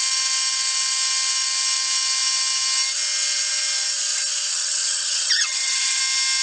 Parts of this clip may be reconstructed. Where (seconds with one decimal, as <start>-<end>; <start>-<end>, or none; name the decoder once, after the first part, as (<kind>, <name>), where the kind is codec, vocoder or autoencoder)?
4.5-6.0 (vocoder, HiFi-GAN)